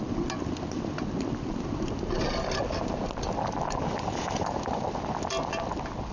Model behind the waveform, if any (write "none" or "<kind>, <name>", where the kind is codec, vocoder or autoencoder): none